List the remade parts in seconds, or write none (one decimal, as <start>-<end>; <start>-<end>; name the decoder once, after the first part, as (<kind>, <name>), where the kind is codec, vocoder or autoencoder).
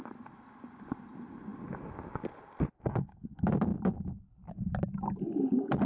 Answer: none